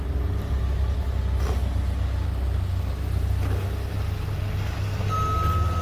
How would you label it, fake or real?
real